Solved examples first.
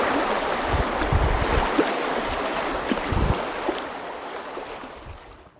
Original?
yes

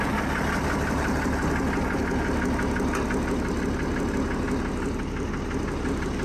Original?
yes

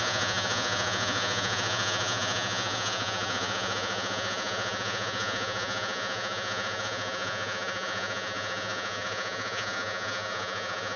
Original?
no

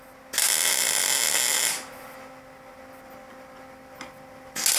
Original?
yes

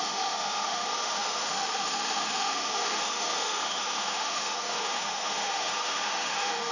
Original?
no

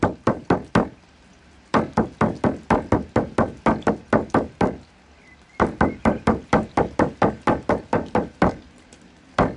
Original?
yes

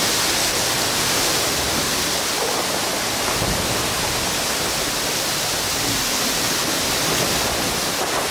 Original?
yes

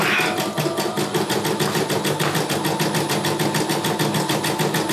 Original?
yes